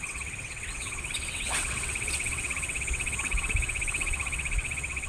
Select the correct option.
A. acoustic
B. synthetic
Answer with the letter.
B